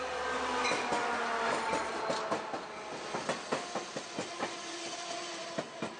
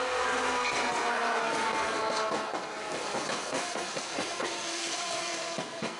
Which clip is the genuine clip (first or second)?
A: first